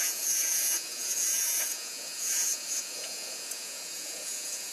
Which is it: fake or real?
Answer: fake